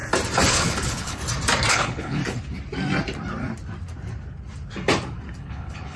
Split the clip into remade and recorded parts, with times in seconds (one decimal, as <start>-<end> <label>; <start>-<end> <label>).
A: 0.0-0.5 recorded; 0.5-1.2 remade; 1.2-1.7 recorded; 1.7-2.2 remade; 2.2-5.4 recorded; 5.4-6.0 remade